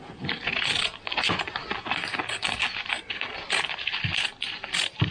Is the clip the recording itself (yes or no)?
yes